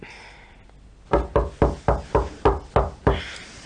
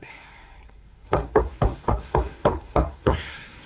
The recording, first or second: first